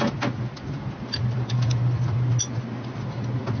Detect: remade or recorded recorded